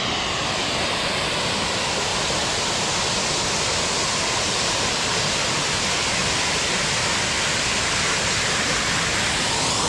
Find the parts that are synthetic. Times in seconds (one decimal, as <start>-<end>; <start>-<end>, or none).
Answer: none